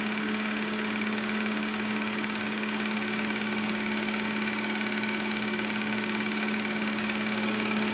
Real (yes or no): no